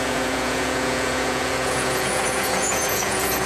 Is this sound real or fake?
fake